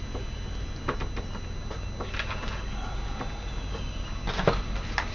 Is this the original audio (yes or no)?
yes